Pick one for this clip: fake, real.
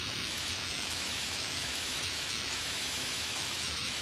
fake